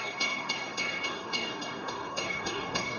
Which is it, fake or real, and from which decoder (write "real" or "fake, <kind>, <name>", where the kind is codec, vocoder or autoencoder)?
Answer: fake, codec, SNAC